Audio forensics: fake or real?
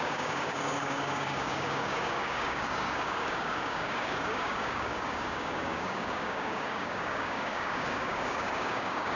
fake